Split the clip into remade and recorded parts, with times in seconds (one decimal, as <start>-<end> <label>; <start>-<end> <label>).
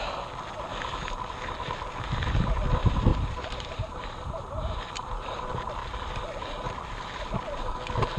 0.0-3.1 recorded; 3.1-5.5 remade; 5.5-8.2 recorded